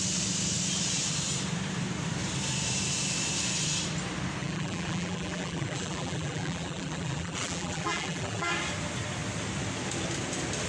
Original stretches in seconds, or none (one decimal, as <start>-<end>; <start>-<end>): 0.0-4.4; 8.5-10.7